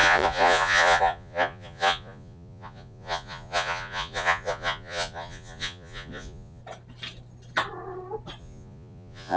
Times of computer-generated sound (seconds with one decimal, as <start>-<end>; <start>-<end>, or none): 0.0-6.6; 8.4-9.4